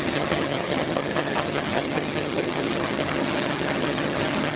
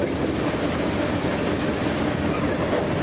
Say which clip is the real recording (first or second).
second